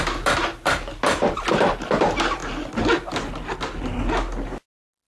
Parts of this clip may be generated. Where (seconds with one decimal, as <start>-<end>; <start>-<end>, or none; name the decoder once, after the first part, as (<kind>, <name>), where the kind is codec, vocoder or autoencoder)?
none

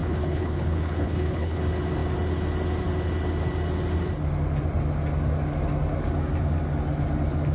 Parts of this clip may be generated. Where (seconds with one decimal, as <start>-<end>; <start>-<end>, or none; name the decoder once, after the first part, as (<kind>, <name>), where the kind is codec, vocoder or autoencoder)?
0.0-1.6 (codec, HILCodec)

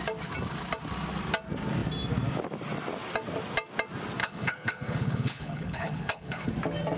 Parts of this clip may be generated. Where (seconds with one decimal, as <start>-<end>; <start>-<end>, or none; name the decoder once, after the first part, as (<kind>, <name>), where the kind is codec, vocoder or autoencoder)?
4.2-6.5 (codec, HILCodec)

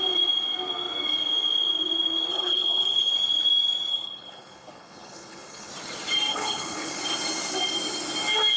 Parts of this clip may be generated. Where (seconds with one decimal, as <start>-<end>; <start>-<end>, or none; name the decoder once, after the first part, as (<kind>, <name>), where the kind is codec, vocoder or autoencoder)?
2.3-3.1 (codec, HILCodec); 3.9-5.7; 6.3-7.0

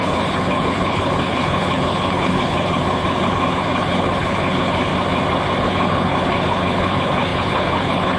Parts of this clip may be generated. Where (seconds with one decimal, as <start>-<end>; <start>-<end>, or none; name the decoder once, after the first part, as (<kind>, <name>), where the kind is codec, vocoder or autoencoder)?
0.0-4.9 (codec, HILCodec); 5.6-8.2

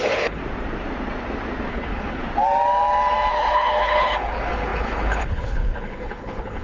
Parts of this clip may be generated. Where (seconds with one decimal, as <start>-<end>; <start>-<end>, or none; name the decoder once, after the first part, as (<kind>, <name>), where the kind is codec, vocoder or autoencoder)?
0.0-0.4 (codec, HILCodec); 1.7-2.2; 3.3-6.6

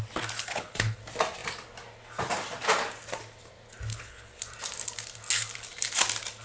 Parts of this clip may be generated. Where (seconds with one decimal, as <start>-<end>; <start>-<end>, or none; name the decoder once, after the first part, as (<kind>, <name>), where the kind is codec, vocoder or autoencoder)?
0.4-1.0 (codec, HILCodec); 3.9-4.4

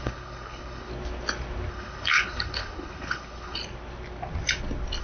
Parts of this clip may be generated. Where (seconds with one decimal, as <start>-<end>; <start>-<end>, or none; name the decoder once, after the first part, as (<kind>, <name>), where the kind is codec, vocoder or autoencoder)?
0.0-0.9 (codec, HILCodec); 1.7-3.6